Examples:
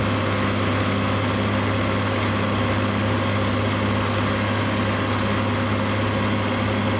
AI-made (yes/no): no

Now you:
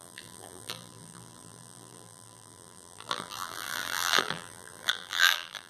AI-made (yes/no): yes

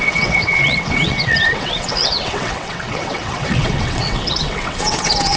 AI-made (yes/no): yes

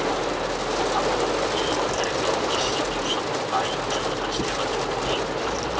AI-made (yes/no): no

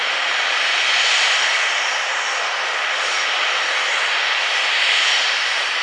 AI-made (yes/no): yes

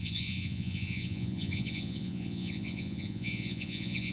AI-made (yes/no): yes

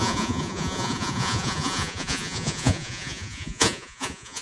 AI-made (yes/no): yes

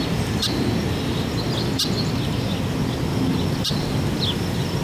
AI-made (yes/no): no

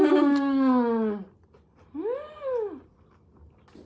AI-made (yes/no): no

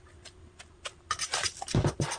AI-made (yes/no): no